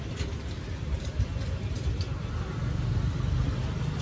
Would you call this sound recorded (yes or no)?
yes